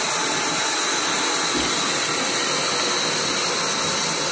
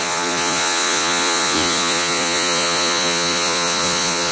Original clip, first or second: first